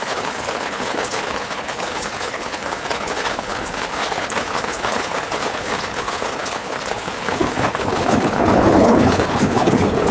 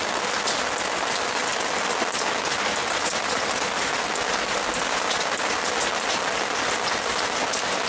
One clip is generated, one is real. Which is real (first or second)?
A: second